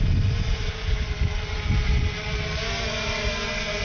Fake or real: real